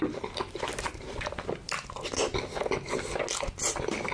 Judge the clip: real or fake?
real